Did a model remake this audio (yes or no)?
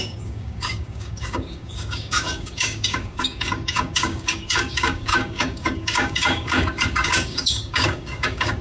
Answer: yes